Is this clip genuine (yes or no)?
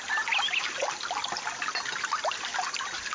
yes